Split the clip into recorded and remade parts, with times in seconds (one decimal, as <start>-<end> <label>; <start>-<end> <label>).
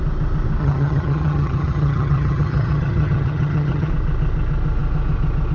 0.0-0.6 recorded; 0.6-3.9 remade; 3.9-5.5 recorded